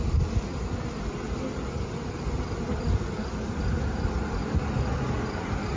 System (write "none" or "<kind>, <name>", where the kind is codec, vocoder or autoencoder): none